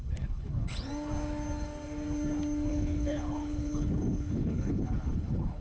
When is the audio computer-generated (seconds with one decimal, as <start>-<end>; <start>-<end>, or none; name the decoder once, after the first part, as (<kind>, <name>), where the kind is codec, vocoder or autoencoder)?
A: 0.0-0.9 (codec, HILCodec); 2.7-5.6